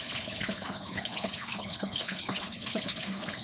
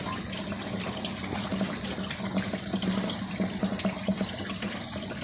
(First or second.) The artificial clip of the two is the first